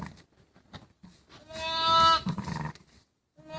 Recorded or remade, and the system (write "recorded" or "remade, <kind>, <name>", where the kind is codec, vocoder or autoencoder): recorded